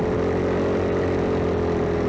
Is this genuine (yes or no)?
yes